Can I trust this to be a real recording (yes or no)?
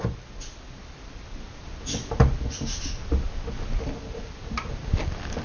yes